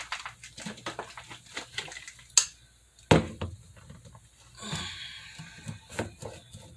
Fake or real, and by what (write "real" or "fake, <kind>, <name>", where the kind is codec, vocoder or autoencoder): real